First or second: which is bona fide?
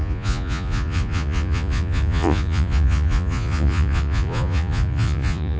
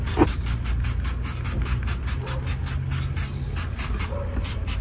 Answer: second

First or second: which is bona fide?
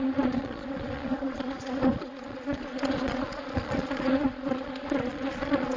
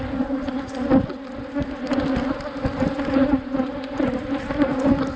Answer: second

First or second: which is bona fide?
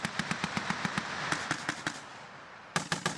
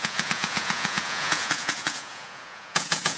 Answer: first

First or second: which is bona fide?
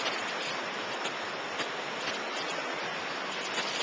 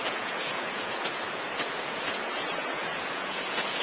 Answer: first